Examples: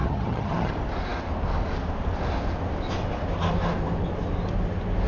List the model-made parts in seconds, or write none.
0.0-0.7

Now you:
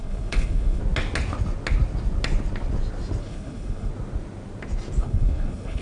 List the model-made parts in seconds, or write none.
0.0-0.8; 3.2-3.9; 5.0-5.8